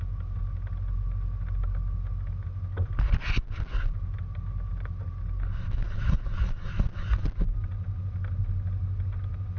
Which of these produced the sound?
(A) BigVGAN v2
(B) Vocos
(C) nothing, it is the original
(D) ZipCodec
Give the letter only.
C